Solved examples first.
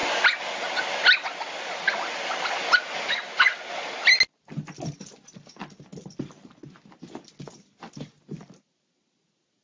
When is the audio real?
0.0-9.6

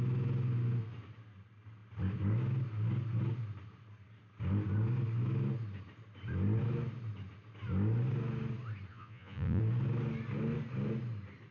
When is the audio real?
0.0-8.9; 9.6-11.5

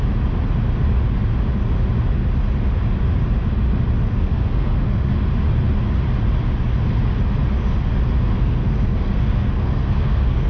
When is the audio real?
0.0-4.1; 5.1-8.3

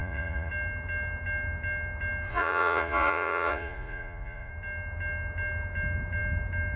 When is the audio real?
0.5-2.3; 4.5-6.8

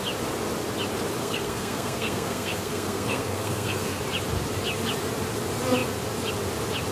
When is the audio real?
0.0-1.2; 4.0-6.9

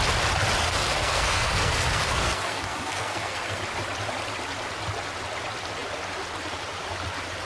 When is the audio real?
0.0-0.6; 3.6-7.5